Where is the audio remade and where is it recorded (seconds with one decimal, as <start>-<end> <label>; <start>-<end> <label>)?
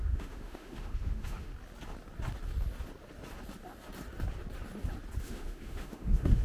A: 0.0-1.5 remade; 1.5-5.2 recorded; 5.2-6.4 remade